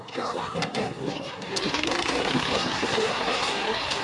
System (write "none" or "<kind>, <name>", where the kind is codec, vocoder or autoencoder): codec, SNAC